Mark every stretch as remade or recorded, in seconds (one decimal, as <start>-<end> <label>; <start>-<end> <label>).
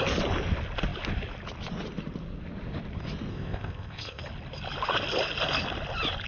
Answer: 0.0-3.3 recorded; 3.3-4.2 remade; 4.2-6.3 recorded